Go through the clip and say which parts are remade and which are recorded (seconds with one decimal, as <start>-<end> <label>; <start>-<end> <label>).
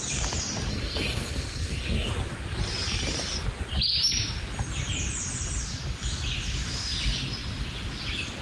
0.0-0.7 recorded; 0.7-2.1 remade; 2.1-8.4 recorded